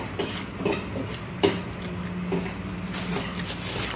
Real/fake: real